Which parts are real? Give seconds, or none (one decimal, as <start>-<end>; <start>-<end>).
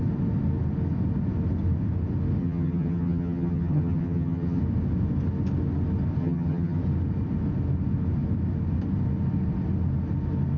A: 0.0-2.4; 4.6-6.2; 6.8-10.6